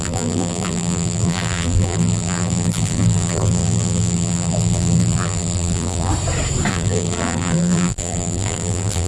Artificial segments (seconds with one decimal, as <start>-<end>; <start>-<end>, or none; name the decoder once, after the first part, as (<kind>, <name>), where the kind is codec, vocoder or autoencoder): 0.0-6.1 (vocoder, BigVGAN v2); 6.7-9.1